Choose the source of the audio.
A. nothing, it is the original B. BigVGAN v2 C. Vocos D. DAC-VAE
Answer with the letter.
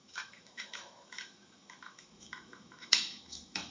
D